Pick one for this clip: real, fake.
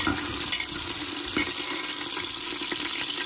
real